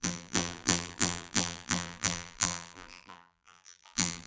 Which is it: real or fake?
fake